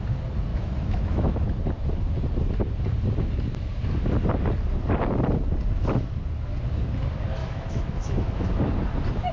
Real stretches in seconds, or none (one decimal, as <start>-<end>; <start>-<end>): 0.0-0.5; 1.3-7.4; 8.6-9.3